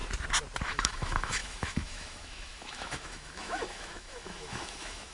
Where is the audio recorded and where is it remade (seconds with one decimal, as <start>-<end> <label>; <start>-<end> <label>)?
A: 0.0-0.6 recorded; 0.6-5.1 remade